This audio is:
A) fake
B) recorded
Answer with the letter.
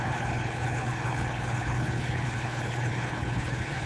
A